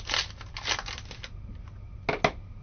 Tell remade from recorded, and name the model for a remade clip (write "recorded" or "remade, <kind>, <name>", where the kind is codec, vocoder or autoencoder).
recorded